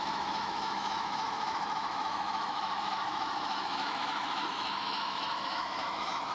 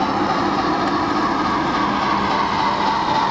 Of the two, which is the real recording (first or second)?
second